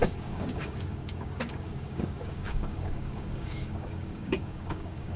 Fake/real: fake